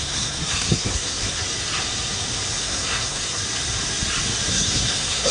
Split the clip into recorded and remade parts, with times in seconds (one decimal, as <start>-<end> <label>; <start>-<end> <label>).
0.0-1.4 remade; 1.4-2.6 recorded; 2.6-3.4 remade; 3.4-4.5 recorded; 4.5-5.3 remade